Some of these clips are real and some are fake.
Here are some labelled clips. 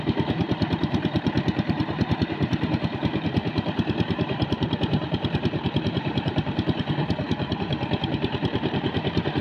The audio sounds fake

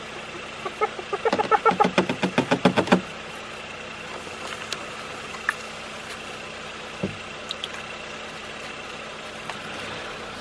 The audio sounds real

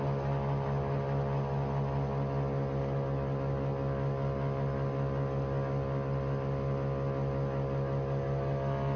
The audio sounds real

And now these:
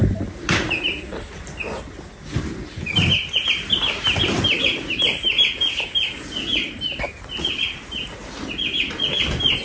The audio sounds real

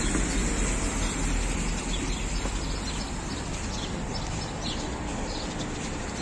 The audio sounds real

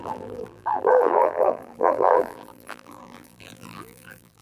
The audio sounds fake